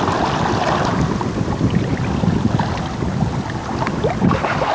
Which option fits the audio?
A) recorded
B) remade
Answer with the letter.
A